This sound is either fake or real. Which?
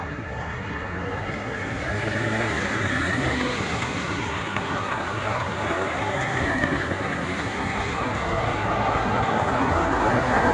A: fake